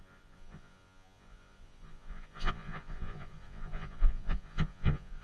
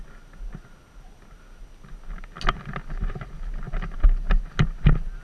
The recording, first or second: second